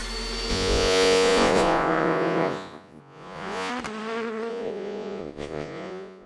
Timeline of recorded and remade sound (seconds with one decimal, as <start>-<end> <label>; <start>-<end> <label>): 0.0-0.5 recorded; 0.5-3.7 remade; 3.7-4.5 recorded; 4.5-6.3 remade